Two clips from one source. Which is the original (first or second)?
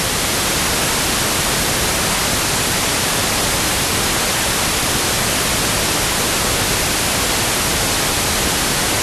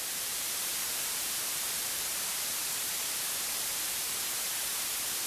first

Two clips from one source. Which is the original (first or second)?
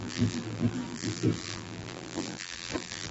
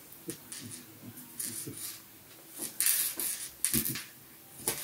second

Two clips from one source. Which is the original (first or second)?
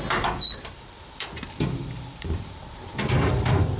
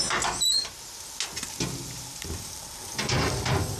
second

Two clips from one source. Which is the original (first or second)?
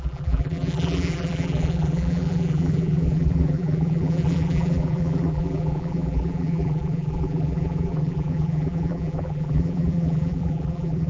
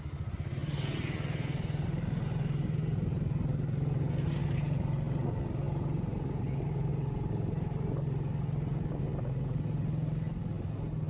second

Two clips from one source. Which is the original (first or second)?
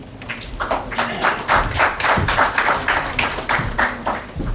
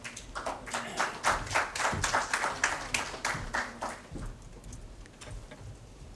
second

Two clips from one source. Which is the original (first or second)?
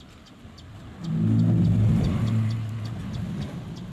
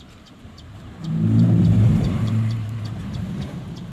first